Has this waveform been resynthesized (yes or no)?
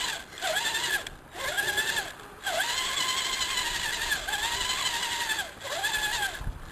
no